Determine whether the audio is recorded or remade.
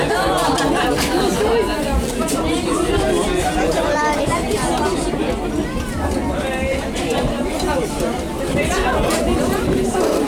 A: recorded